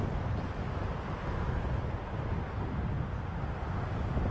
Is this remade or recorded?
recorded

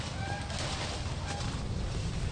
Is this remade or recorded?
recorded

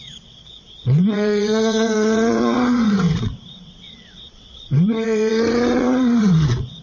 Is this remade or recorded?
remade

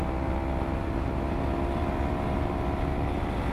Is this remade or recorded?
recorded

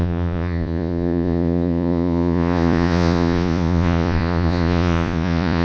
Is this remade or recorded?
remade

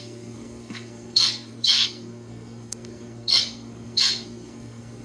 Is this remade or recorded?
remade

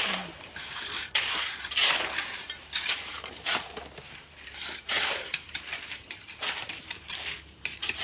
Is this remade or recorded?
remade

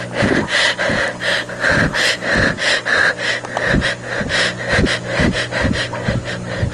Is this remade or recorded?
recorded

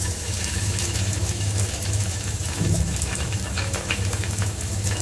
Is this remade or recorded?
remade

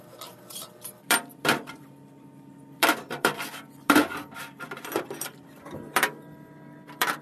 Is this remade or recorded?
remade